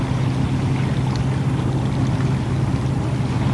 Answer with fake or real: real